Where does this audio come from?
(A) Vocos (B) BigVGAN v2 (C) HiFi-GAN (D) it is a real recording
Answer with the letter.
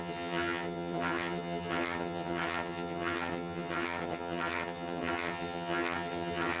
C